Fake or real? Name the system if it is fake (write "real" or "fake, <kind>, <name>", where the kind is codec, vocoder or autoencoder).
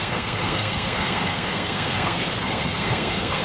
fake, codec, SNAC